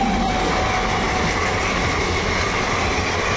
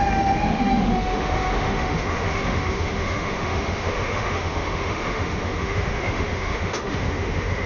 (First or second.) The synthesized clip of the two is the second